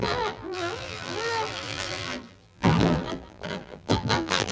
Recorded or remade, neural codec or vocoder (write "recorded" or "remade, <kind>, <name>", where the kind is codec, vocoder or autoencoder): remade, vocoder, BigVGAN v2